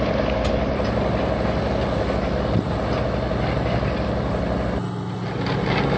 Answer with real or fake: real